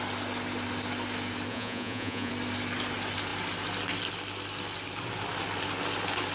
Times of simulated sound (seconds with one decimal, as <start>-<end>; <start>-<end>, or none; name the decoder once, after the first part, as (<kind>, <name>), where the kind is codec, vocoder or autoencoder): 1.5-2.3 (vocoder, Vocos)